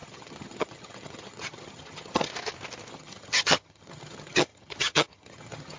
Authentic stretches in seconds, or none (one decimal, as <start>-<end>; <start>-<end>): 2.3-2.9